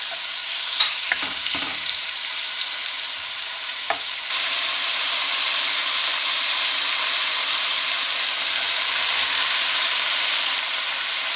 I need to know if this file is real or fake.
fake